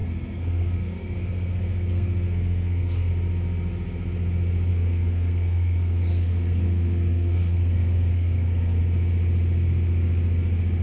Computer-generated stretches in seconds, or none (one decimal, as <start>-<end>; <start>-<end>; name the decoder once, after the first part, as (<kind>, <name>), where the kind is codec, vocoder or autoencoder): 0.0-3.1 (codec, SNAC); 4.7-8.8